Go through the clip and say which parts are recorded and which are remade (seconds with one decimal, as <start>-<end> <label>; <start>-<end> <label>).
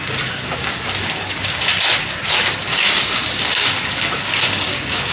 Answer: 0.0-1.7 remade; 1.7-2.5 recorded; 2.5-5.1 remade